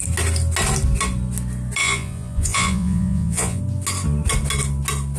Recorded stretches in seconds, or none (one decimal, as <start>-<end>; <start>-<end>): 0.0-1.8; 3.6-5.2